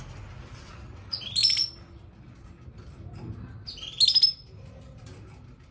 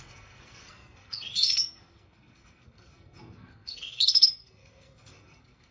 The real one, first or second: first